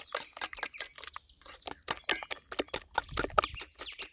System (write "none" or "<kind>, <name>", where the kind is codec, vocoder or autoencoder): none